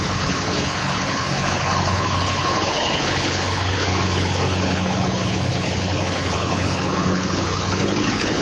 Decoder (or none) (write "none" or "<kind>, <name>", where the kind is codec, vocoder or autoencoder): codec, HILCodec